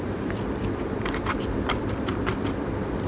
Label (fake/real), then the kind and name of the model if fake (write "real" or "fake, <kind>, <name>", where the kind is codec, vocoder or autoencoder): fake, vocoder, BigVGAN v2